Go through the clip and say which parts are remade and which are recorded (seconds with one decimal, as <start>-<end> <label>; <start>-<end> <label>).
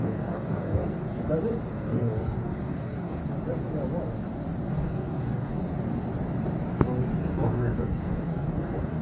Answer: 0.0-1.2 remade; 1.2-1.7 recorded; 1.7-3.2 remade; 3.2-4.7 recorded; 4.7-5.6 remade; 5.6-7.2 recorded; 7.2-9.0 remade